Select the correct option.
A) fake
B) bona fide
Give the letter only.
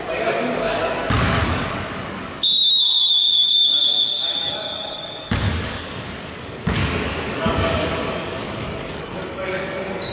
A